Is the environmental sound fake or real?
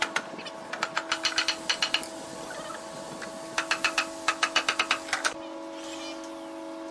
real